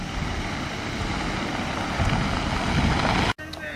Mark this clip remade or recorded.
recorded